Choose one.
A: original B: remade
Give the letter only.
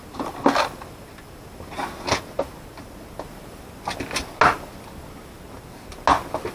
A